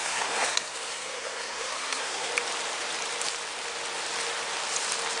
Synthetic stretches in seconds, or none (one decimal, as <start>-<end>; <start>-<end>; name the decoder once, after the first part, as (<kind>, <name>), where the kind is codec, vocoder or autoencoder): 0.0-2.3 (codec, SNAC)